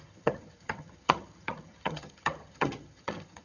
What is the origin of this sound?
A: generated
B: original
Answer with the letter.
A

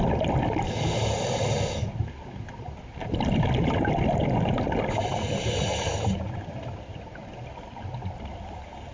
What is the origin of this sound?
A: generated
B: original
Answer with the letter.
B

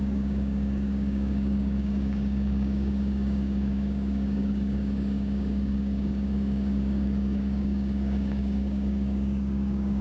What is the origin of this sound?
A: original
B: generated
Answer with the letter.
B